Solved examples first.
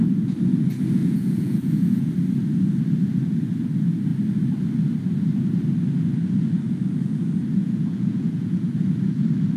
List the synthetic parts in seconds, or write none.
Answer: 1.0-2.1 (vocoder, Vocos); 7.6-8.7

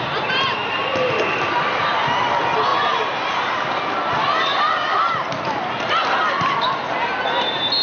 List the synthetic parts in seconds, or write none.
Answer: 2.7-6.9 (vocoder, BigVGAN v2)

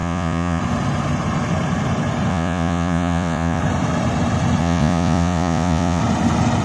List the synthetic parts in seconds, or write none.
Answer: 0.0-0.6 (vocoder, Vocos); 2.3-3.6; 4.6-6.0